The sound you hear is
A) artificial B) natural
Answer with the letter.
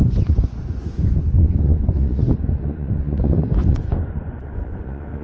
A